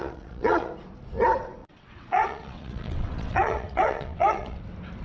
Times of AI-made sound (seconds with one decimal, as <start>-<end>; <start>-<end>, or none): 0.0-0.7; 1.6-4.6